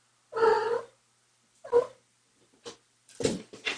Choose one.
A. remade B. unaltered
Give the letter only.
B